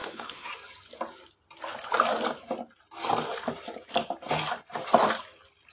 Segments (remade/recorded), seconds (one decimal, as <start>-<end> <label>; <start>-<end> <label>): 0.0-0.5 remade; 0.5-5.7 recorded